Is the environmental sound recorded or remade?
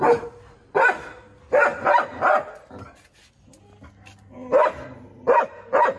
recorded